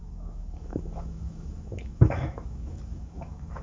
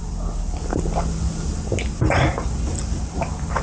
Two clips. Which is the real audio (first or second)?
second